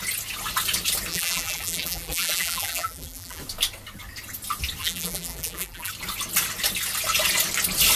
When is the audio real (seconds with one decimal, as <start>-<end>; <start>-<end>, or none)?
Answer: 0.0-1.1; 3.4-4.8; 5.9-8.0